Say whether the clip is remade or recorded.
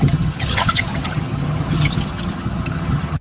remade